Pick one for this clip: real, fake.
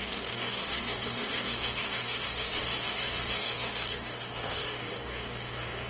fake